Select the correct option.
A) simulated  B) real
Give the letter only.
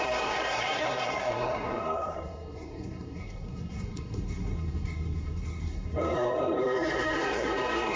A